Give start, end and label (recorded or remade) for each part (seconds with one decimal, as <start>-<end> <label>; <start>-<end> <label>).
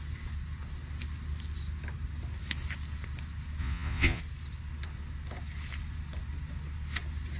0.0-3.6 recorded; 3.6-4.2 remade; 4.2-7.4 recorded